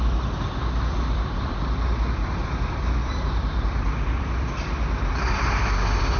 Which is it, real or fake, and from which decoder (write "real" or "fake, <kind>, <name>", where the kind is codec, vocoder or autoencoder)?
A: fake, vocoder, BigVGAN v2